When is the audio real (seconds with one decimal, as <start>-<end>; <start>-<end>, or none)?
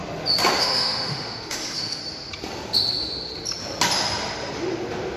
0.0-0.6; 2.0-5.2